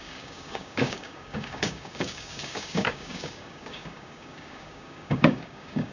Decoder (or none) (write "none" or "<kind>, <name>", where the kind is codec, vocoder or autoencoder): codec, DAC